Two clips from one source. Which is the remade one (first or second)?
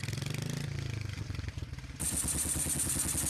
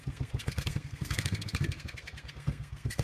second